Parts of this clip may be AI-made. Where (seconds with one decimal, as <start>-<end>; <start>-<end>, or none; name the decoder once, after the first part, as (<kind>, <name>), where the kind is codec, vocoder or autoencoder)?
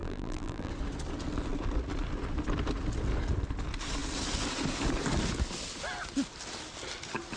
0.0-0.7 (vocoder, BigVGAN v2)